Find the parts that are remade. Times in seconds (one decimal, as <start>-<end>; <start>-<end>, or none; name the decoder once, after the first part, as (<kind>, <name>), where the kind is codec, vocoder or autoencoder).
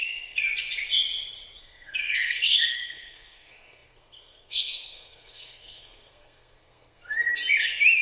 0.0-0.4 (codec, SNAC); 1.6-7.3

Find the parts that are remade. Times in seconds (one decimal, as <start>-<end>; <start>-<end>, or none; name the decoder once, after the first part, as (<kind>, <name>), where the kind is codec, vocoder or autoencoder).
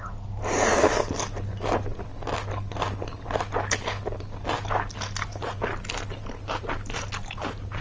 none